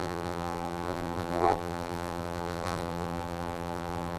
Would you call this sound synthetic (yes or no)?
yes